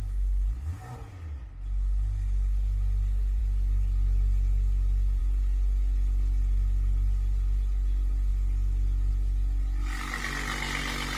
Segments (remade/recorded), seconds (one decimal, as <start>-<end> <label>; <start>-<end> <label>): 0.0-11.2 recorded